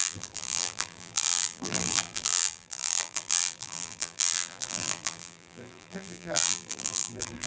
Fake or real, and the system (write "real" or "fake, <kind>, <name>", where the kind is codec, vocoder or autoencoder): fake, vocoder, BigVGAN v2